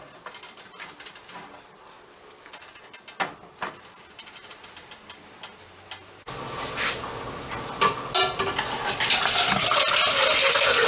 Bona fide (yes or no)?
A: yes